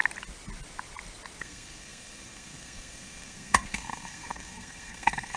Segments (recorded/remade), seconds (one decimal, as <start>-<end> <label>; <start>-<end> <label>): 0.0-1.4 recorded; 1.4-5.4 remade